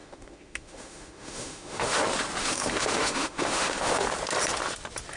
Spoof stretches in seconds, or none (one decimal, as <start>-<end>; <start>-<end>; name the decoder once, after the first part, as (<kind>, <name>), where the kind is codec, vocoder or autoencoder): 0.0-2.0 (autoencoder, DAC-VAE); 2.4-4.1